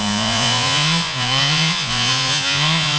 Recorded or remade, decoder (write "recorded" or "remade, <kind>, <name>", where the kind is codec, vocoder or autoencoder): remade, vocoder, Vocos